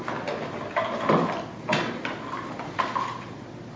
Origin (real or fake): real